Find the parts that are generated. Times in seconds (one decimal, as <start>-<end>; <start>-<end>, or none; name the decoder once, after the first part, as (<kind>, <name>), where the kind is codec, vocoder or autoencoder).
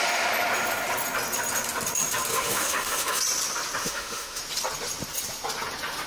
2.3-3.2 (autoencoder, DAC-VAE); 3.8-4.4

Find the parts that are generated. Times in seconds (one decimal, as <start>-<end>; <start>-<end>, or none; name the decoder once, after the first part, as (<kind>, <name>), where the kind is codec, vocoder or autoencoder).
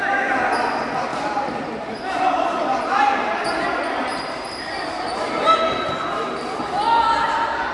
1.1-3.3 (vocoder, BigVGAN v2); 4.1-5.3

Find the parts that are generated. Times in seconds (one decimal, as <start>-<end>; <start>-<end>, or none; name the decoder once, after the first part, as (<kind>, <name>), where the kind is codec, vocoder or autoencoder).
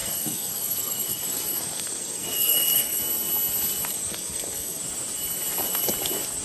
0.0-3.0 (codec, SNAC); 3.9-4.8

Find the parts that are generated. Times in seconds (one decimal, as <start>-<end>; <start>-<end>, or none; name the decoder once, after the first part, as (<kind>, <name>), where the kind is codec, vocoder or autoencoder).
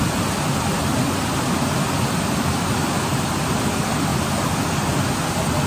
none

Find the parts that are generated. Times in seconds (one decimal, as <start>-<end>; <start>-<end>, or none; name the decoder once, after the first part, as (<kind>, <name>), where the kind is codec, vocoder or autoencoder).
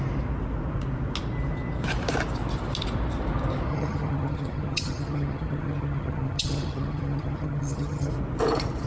3.7-8.1 (vocoder, HiFi-GAN)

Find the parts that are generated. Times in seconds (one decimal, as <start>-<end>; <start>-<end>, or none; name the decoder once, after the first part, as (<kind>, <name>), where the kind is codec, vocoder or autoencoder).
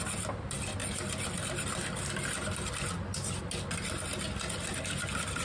none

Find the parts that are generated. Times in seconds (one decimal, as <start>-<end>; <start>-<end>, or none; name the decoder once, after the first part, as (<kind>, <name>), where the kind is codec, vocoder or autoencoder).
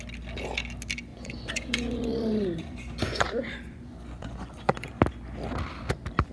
1.1-4.9 (vocoder, Vocos)